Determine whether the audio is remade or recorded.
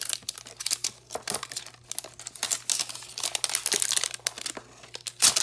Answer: recorded